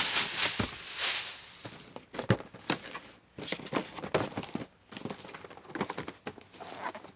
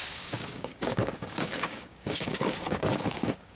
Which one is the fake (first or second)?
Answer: second